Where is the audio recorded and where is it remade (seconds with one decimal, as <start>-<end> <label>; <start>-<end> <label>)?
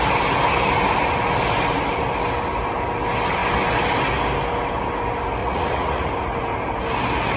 0.0-5.4 recorded; 5.4-6.1 remade; 6.1-7.4 recorded